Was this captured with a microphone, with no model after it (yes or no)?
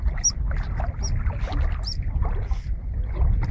yes